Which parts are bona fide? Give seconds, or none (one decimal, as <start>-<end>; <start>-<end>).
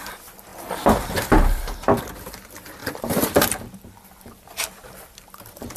0.5-1.0